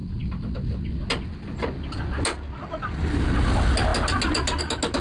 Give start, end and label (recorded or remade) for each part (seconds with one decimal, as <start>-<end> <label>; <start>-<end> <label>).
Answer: 0.0-5.0 recorded